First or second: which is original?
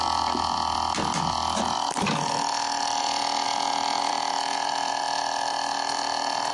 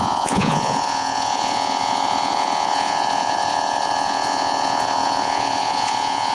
first